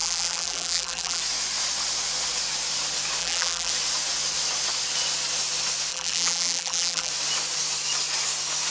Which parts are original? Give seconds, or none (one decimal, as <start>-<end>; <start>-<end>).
1.2-3.2; 3.7-5.9; 7.1-8.7